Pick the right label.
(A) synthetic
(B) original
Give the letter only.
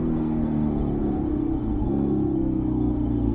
A